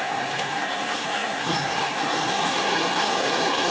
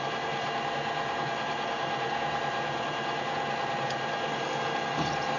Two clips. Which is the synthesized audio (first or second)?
first